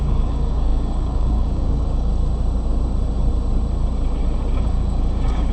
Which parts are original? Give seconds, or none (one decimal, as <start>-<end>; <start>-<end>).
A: 2.1-4.6